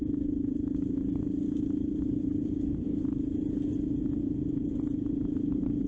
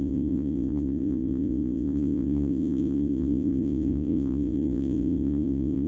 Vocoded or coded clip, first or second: second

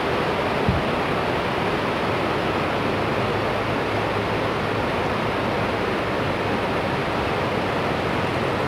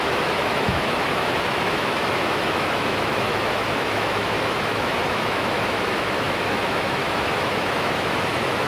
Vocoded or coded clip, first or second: second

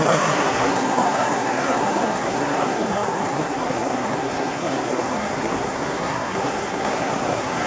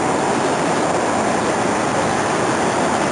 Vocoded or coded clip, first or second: first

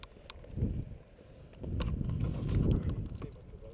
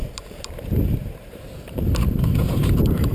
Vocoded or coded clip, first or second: second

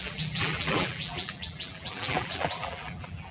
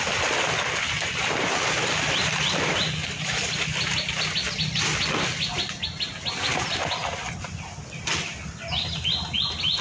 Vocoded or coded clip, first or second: first